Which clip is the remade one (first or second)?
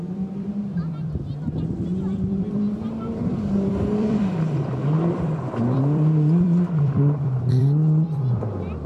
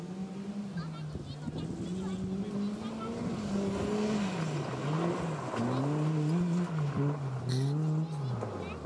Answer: first